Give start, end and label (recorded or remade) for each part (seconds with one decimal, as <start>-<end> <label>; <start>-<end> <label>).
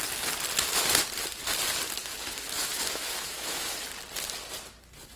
0.0-2.0 recorded; 2.0-3.8 remade; 3.8-5.2 recorded